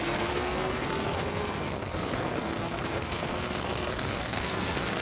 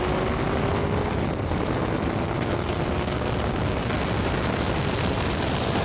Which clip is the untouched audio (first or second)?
second